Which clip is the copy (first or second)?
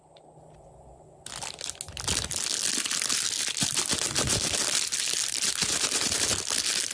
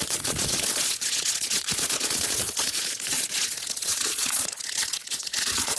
second